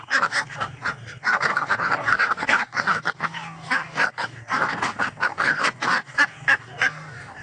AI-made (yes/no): yes